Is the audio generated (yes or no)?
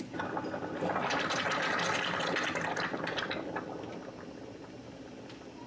no